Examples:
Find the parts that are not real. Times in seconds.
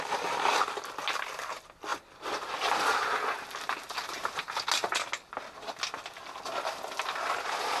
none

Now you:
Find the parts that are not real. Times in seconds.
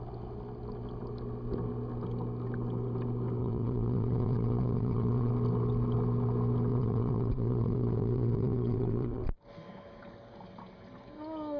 3.4-5.3 (vocoder, WaveNeXt); 6.7-9.2